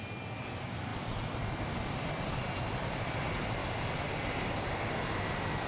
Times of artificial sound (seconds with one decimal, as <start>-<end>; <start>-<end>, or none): none